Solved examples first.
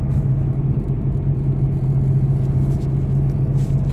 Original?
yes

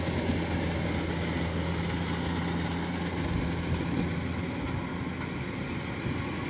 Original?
yes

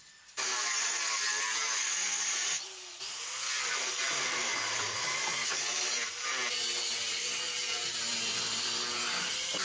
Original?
no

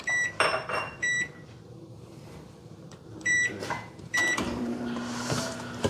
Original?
no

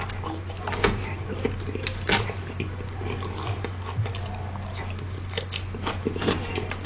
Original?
yes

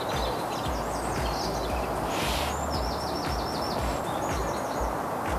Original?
yes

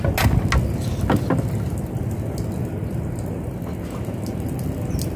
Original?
yes